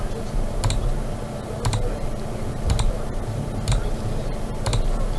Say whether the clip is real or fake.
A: real